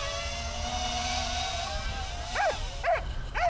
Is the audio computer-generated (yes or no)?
no